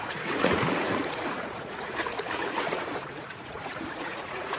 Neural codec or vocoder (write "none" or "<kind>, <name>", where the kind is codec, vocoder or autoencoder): vocoder, Vocos